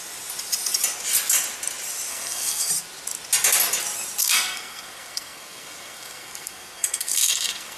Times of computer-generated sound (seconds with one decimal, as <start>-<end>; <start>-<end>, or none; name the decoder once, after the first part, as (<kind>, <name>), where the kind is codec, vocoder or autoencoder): 2.1-2.7 (codec, SNAC); 4.2-7.8